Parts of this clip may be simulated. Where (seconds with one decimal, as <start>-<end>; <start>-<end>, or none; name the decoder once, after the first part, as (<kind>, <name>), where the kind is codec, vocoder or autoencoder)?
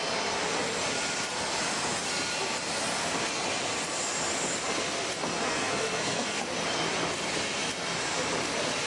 5.4-6.4 (codec, SNAC)